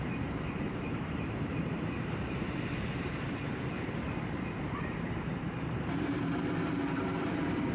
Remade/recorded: remade